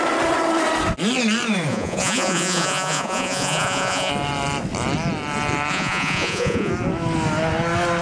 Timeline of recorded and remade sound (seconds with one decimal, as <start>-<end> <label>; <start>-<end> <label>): 0.0-1.7 recorded; 1.7-4.1 remade; 4.1-5.7 recorded; 5.7-6.7 remade; 6.7-8.0 recorded

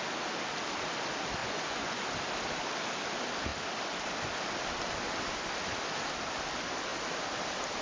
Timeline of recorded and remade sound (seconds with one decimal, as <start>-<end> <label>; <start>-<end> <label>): 0.0-1.4 recorded; 1.4-2.0 remade; 2.0-7.8 recorded

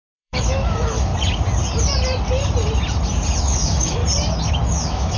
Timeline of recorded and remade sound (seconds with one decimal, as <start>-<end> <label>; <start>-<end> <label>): 0.0-1.1 remade; 1.1-3.4 recorded; 3.4-4.0 remade; 4.0-4.5 recorded; 4.5-5.2 remade

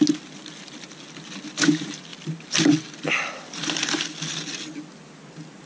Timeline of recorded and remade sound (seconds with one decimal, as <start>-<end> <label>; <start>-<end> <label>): 0.0-5.7 recorded

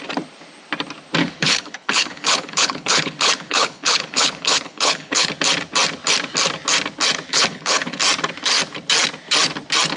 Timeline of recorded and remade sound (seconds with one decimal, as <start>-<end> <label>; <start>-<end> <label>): 0.0-1.2 recorded; 1.2-5.3 remade; 5.3-7.3 recorded; 7.3-8.0 remade; 8.0-10.0 recorded